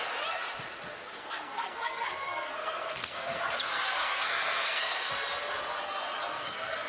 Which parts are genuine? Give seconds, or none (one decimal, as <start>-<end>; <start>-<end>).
0.0-1.0; 5.1-6.3